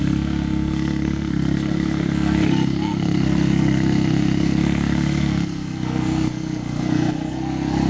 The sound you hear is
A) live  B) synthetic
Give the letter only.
B